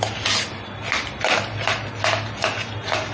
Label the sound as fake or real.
real